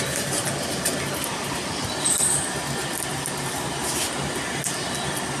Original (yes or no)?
yes